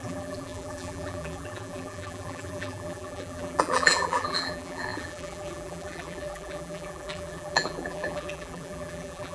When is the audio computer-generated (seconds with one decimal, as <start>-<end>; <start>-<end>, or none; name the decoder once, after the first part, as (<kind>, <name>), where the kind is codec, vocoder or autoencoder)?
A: 0.0-9.3 (vocoder, BigVGAN v2)